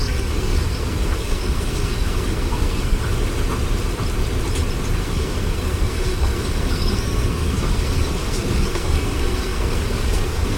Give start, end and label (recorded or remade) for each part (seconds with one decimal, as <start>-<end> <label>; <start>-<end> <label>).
0.0-3.0 remade; 3.0-5.0 recorded; 5.0-10.6 remade